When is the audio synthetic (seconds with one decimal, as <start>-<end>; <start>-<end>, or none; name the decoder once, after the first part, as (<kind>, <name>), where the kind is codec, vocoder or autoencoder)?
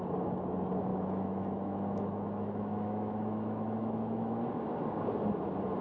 0.9-4.4 (autoencoder, DAC-VAE)